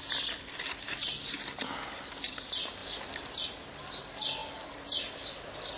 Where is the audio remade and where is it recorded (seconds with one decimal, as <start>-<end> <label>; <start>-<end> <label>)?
0.0-5.8 recorded